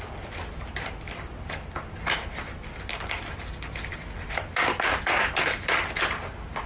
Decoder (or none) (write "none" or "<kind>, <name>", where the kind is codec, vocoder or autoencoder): none